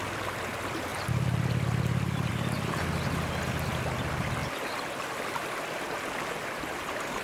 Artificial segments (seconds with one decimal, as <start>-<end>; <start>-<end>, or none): 0.9-2.3